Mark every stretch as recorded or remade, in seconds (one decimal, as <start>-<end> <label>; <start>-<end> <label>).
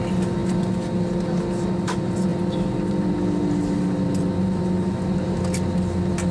0.0-6.3 recorded